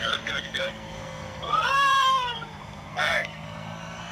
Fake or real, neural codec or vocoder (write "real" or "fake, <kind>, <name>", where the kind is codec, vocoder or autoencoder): fake, codec, SNAC